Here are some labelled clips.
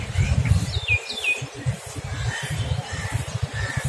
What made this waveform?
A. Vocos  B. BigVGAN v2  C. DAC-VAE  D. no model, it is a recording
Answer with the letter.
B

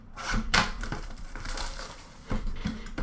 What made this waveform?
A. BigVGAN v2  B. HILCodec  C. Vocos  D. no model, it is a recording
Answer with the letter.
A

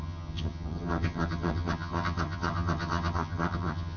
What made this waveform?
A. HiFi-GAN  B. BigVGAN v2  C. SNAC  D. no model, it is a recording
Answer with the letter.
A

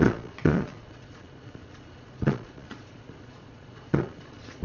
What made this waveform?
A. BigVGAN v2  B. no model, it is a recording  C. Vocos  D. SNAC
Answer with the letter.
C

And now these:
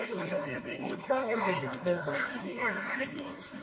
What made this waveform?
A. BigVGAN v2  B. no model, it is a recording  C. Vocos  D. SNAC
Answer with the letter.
D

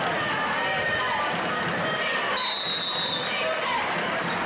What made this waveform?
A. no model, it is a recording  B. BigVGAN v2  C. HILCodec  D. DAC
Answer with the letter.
A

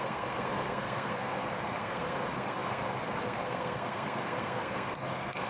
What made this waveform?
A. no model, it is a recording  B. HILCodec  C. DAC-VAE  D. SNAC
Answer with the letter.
D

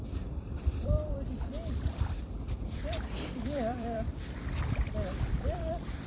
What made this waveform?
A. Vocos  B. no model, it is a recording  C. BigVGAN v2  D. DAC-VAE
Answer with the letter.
C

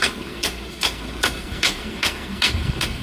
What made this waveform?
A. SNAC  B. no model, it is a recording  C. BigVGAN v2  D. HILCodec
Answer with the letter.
A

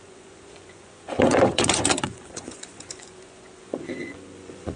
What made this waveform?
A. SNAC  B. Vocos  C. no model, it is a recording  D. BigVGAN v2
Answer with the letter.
B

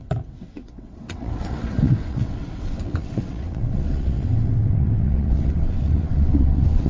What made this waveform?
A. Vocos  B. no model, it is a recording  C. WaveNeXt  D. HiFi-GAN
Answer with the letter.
C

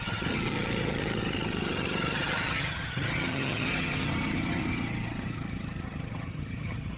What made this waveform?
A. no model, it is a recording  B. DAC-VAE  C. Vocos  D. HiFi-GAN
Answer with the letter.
D